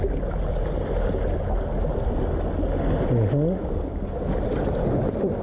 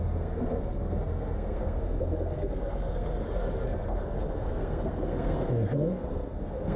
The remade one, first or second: second